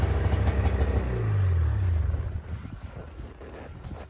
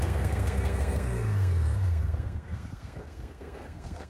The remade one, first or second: second